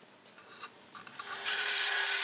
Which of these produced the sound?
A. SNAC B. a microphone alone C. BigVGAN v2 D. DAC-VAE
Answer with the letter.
C